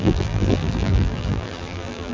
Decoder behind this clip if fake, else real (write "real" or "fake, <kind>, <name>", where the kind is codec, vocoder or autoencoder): fake, vocoder, BigVGAN v2